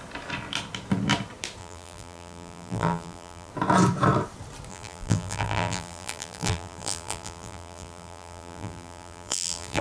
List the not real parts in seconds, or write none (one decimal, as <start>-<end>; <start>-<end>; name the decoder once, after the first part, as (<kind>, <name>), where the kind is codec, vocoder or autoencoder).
1.6-3.5 (vocoder, BigVGAN v2); 4.7-9.8

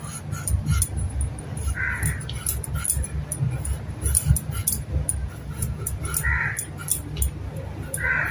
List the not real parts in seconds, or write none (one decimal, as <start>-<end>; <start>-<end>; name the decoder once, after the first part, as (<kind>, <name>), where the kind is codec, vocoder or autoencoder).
5.2-6.0 (vocoder, Vocos)

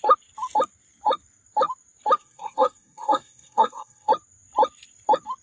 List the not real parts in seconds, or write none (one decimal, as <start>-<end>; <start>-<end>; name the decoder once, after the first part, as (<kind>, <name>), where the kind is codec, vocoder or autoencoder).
2.2-4.1 (codec, SNAC)

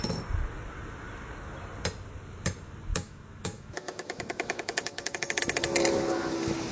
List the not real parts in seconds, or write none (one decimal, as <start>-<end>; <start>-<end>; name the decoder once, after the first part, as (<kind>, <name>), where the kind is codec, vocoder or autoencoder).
2.9-5.4 (autoencoder, DAC-VAE)

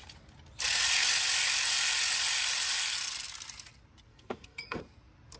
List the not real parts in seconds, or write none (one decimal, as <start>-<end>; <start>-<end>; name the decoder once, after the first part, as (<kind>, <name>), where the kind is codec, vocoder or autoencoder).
4.1-4.8 (codec, SNAC)

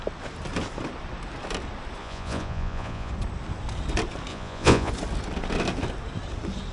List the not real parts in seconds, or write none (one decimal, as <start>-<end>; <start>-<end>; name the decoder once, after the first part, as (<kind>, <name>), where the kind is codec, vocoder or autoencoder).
2.0-3.1 (vocoder, Vocos); 4.3-4.9